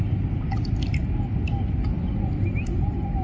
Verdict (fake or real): real